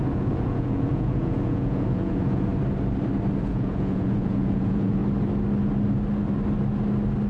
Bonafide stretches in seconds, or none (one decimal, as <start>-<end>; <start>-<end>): 2.5-3.4; 5.0-7.3